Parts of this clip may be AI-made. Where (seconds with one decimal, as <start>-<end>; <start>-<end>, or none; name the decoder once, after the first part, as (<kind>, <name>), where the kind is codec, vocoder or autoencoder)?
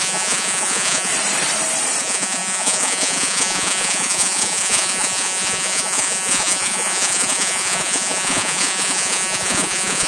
0.0-1.1 (vocoder, Vocos); 2.0-10.1